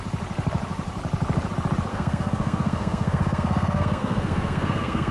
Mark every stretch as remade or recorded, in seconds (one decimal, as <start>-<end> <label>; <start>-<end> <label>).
0.0-1.9 recorded; 1.9-5.1 remade